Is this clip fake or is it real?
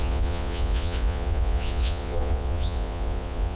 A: fake